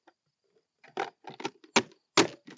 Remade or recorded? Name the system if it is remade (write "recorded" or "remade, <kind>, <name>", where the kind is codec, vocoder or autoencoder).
recorded